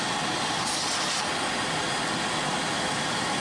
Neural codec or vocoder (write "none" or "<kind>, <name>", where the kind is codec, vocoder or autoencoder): none